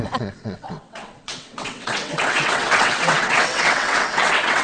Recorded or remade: remade